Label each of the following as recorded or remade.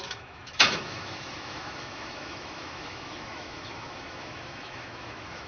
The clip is remade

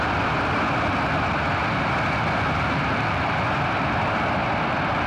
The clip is recorded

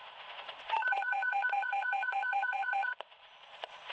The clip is remade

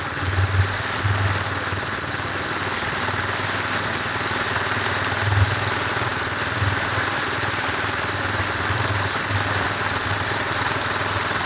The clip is recorded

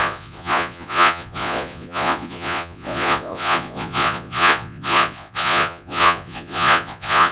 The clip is remade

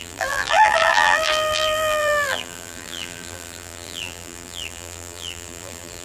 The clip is remade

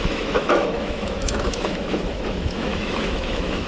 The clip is remade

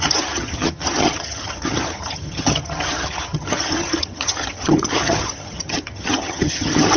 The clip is remade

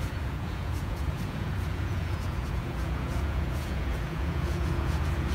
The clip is remade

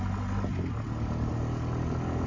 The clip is recorded